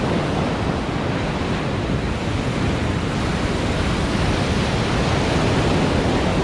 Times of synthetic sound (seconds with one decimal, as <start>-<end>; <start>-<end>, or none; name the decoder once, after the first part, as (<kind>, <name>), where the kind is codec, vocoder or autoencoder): none